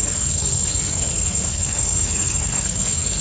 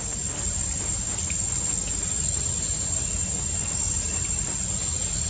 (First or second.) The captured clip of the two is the second